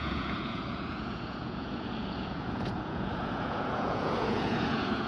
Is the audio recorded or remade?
remade